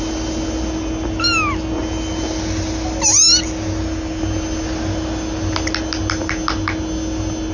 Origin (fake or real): real